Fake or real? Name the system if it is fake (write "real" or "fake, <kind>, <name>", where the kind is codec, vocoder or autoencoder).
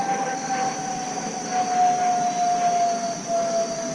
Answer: real